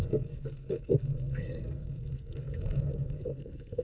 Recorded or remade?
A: remade